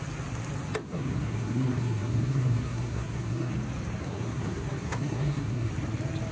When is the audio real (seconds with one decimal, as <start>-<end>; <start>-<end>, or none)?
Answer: 0.0-0.8; 3.5-4.0; 5.7-6.3